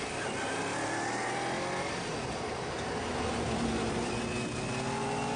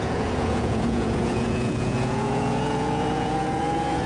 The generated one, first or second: second